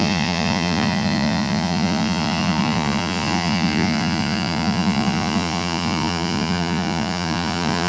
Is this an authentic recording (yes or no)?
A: no